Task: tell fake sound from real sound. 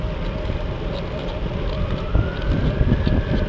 real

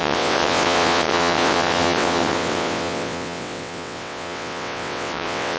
fake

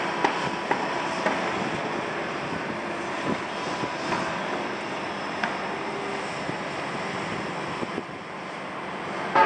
real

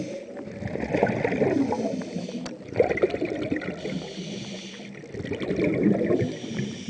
real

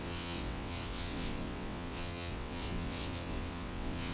fake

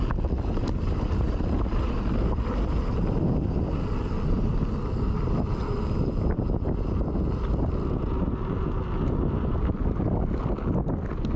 real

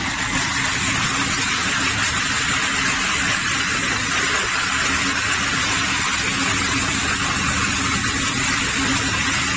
real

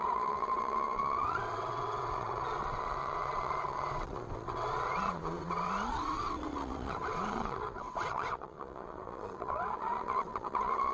fake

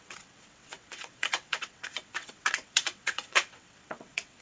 fake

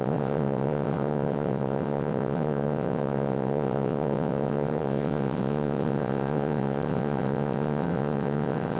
fake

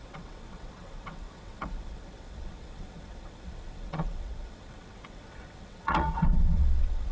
fake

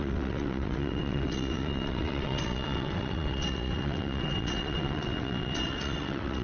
fake